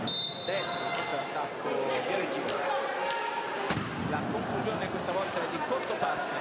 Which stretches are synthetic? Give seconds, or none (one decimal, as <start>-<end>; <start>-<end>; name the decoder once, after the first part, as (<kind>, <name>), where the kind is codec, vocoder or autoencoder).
none